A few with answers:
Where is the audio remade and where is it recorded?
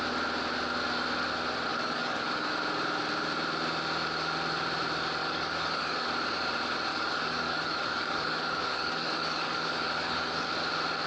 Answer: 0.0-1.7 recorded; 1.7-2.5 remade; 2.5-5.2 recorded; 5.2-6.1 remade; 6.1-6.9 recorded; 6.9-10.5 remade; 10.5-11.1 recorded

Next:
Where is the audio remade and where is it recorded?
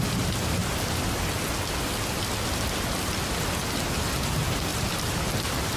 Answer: 0.0-0.6 remade; 0.6-4.1 recorded; 4.1-4.7 remade; 4.7-5.8 recorded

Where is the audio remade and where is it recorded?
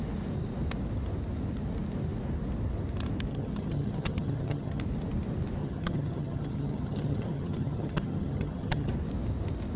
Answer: 0.0-3.3 recorded; 3.3-4.8 remade; 4.8-5.6 recorded; 5.6-8.9 remade; 8.9-9.8 recorded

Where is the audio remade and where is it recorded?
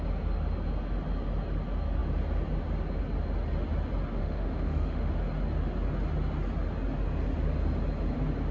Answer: 0.0-4.2 recorded; 4.2-5.1 remade; 5.1-8.5 recorded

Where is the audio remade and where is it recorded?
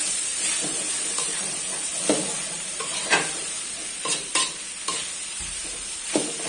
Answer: 0.0-1.9 remade; 1.9-2.5 recorded; 2.5-4.3 remade; 4.3-5.3 recorded; 5.3-6.5 remade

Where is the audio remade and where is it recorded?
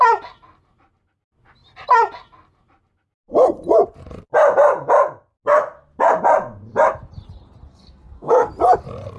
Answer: 0.0-7.7 recorded; 7.7-8.5 remade; 8.5-9.2 recorded